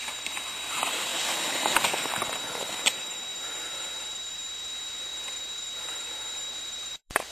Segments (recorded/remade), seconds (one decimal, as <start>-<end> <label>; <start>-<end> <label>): 0.0-1.1 remade; 1.1-1.9 recorded; 1.9-7.3 remade